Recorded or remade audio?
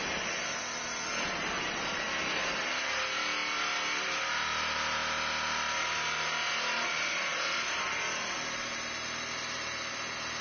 recorded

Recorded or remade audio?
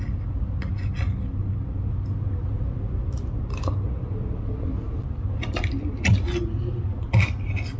recorded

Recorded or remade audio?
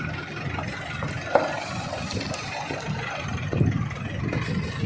recorded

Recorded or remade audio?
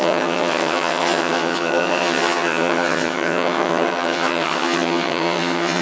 remade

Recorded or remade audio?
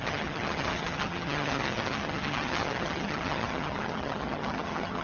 remade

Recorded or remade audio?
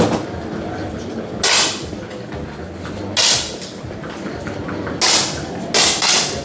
recorded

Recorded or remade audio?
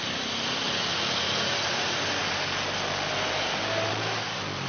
recorded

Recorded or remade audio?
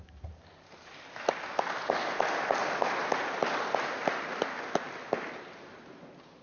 recorded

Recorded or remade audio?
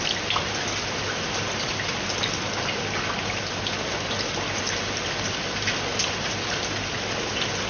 recorded